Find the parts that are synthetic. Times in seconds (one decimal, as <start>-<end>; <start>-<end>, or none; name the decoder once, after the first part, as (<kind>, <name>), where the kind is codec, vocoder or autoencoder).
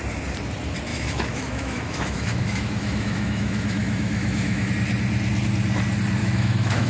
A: 0.9-4.7 (autoencoder, DAC-VAE); 6.2-6.9